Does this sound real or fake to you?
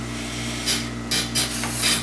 real